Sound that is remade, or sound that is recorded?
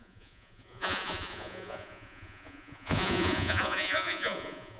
remade